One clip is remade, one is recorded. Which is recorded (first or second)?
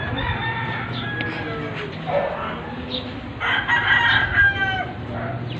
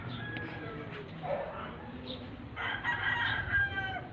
first